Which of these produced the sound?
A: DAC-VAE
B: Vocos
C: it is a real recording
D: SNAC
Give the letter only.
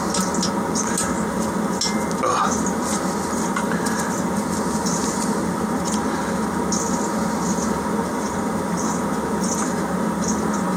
C